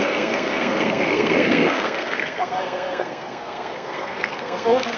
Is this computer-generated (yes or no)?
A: yes